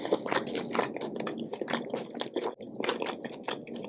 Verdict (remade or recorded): recorded